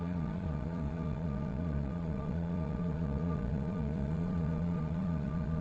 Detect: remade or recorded remade